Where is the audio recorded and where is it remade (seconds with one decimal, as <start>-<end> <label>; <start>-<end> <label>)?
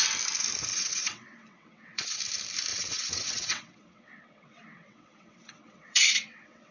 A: 0.0-0.7 recorded; 0.7-2.2 remade; 2.2-2.7 recorded; 2.7-6.7 remade